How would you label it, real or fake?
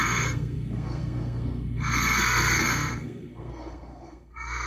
fake